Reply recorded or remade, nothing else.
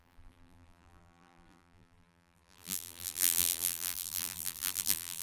remade